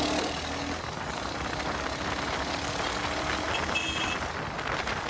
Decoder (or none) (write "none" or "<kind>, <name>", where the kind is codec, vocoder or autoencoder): none